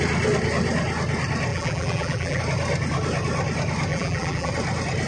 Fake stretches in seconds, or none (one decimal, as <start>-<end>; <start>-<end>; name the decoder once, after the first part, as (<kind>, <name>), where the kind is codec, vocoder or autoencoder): 1.5-2.4 (vocoder, BigVGAN v2); 3.9-4.5